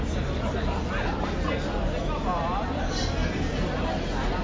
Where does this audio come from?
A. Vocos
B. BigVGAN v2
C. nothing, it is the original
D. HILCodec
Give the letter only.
C